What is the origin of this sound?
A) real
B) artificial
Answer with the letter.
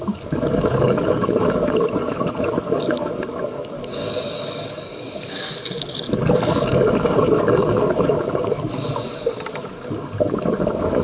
B